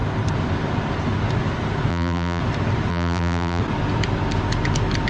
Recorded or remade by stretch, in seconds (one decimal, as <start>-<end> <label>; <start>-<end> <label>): 0.0-1.9 recorded; 1.9-2.4 remade; 2.4-2.9 recorded; 2.9-3.6 remade; 3.6-5.1 recorded

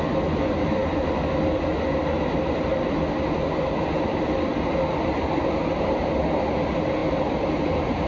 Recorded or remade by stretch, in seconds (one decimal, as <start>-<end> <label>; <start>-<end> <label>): 0.0-8.1 recorded